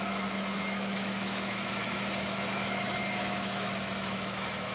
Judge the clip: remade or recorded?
remade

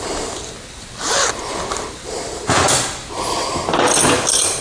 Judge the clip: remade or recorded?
recorded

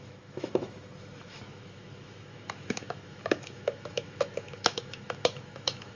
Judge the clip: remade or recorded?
remade